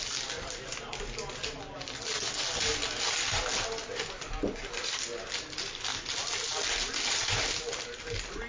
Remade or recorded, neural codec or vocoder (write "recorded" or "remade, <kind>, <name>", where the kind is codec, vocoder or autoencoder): recorded